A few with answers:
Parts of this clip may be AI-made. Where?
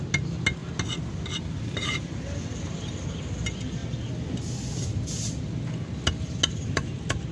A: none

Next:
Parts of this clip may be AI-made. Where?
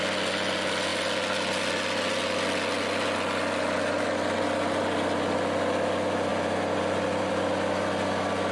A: 6.3-7.3 (vocoder, BigVGAN v2)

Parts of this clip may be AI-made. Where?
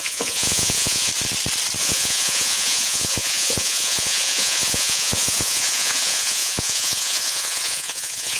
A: 0.0-1.1 (vocoder, Vocos); 1.8-8.4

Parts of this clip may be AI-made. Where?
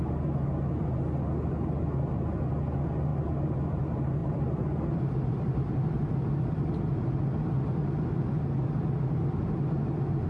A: 3.1-3.7 (vocoder, BigVGAN v2); 4.2-6.0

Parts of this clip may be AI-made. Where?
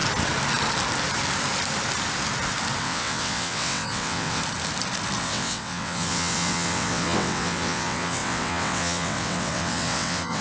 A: 2.8-4.4 (vocoder, WaveNeXt); 5.2-10.4